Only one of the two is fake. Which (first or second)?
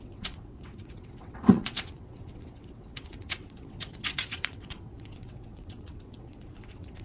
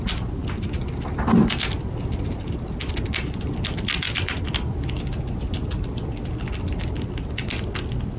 first